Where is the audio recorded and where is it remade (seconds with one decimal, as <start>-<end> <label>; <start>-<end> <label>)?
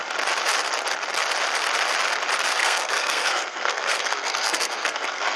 0.0-2.5 recorded; 2.5-5.4 remade